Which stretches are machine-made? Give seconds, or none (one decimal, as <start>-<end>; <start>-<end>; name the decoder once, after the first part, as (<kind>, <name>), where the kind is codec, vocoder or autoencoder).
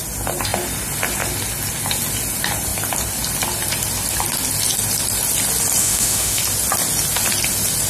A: 5.8-6.4 (autoencoder, DAC-VAE)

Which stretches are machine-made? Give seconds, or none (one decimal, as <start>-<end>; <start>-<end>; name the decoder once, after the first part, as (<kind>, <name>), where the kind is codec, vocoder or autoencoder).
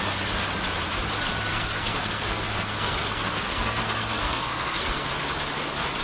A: 1.5-5.1 (codec, SNAC)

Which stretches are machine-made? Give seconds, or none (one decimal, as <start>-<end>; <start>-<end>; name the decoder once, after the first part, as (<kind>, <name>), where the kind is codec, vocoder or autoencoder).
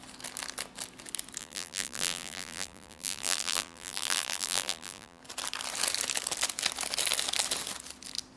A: 1.4-5.2 (vocoder, BigVGAN v2)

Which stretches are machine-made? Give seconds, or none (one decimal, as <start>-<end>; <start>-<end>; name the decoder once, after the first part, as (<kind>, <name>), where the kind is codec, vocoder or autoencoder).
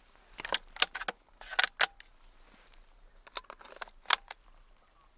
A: none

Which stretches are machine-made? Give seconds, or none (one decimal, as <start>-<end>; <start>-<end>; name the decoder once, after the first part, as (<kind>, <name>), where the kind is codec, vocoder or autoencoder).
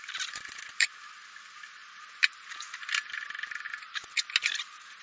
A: 0.0-1.8 (vocoder, BigVGAN v2)